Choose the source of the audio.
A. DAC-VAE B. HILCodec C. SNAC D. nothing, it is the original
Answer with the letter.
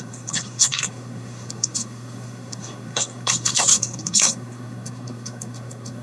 C